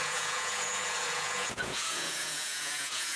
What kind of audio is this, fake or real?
fake